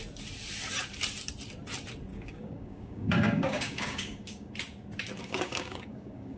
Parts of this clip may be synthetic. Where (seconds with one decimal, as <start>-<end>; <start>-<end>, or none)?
2.1-4.5; 5.2-6.4